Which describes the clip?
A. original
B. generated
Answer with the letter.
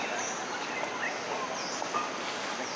A